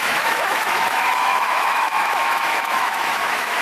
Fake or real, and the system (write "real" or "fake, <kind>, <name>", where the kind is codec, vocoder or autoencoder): fake, autoencoder, DAC-VAE